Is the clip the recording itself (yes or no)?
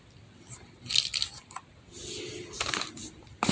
yes